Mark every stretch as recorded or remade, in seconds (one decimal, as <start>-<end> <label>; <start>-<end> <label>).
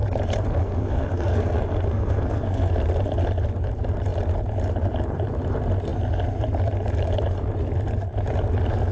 0.0-0.6 recorded; 0.6-2.7 remade; 2.7-8.9 recorded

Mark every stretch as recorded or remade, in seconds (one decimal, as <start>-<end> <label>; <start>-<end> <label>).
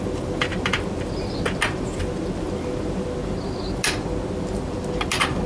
0.0-5.5 recorded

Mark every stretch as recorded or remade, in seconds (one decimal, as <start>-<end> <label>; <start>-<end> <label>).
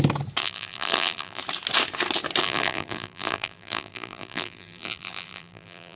0.0-0.4 recorded; 0.4-1.4 remade; 1.4-2.4 recorded; 2.4-6.0 remade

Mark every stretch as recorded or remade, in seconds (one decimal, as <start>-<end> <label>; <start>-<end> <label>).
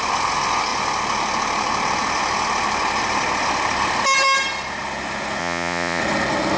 0.0-5.4 recorded; 5.4-6.0 remade; 6.0-6.6 recorded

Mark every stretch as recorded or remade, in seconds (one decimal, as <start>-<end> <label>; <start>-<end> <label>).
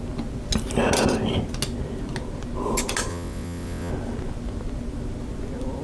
0.0-3.1 recorded; 3.1-3.9 remade; 3.9-5.8 recorded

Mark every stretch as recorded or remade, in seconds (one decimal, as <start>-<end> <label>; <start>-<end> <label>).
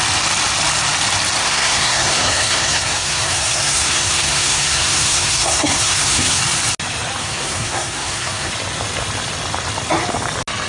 0.0-1.4 recorded; 1.4-6.4 remade; 6.4-7.2 recorded; 7.2-8.5 remade; 8.5-10.7 recorded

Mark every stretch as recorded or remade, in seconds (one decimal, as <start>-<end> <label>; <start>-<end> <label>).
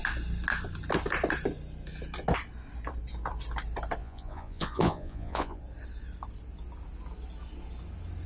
0.0-4.0 recorded; 4.0-5.6 remade; 5.6-8.3 recorded